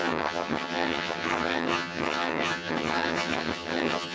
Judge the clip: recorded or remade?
remade